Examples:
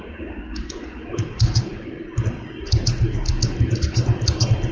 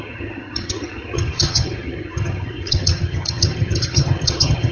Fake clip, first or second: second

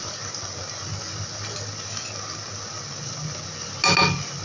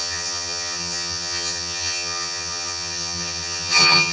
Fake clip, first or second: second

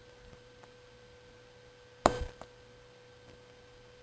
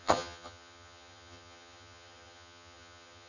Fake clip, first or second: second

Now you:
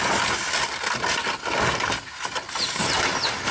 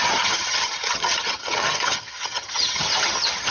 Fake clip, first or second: second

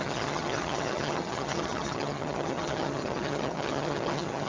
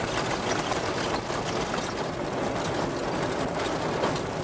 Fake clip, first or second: first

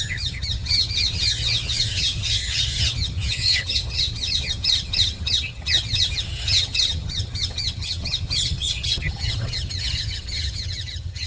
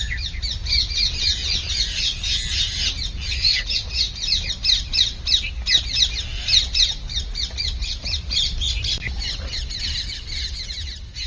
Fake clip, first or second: first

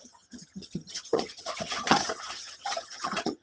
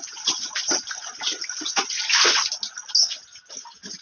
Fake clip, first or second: first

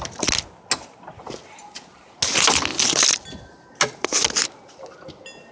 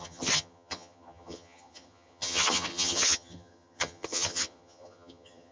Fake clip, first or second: second